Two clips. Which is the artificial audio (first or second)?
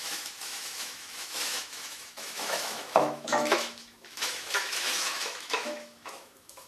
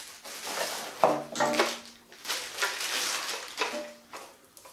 first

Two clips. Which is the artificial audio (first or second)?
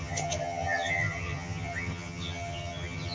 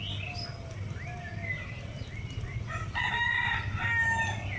first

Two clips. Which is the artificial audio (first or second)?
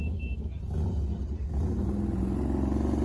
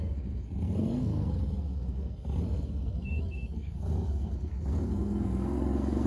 second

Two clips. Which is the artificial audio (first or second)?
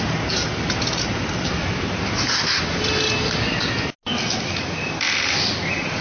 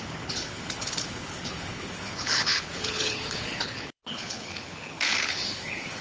second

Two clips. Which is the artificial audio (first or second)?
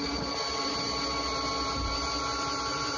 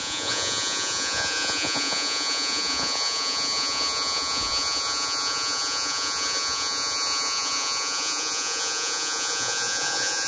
second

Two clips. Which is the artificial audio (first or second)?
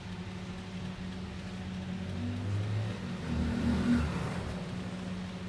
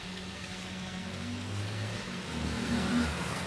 second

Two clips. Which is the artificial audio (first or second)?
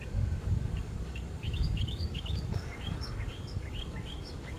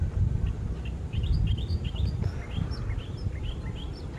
first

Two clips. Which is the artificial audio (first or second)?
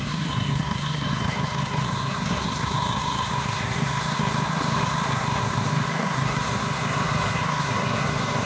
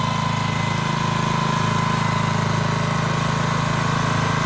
first